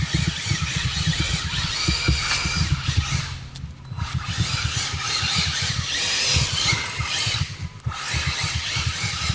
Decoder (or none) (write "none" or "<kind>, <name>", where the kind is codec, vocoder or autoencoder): none